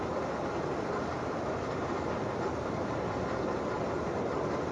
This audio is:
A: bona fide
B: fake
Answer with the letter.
A